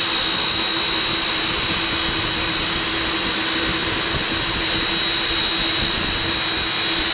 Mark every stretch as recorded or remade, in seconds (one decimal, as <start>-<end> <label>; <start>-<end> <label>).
0.0-7.1 recorded